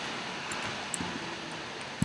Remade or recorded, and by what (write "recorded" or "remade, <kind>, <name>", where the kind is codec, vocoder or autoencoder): recorded